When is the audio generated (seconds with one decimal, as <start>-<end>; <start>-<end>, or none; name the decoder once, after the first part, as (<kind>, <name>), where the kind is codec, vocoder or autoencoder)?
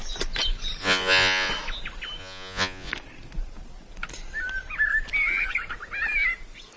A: 0.8-1.5 (vocoder, Vocos); 2.2-2.9